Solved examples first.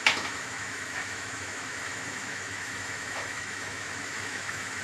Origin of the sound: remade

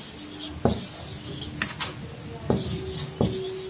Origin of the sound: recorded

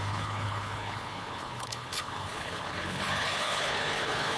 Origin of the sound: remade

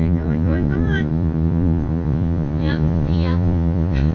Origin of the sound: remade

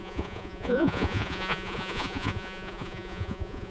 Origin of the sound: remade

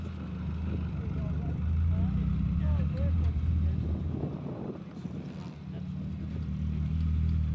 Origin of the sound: recorded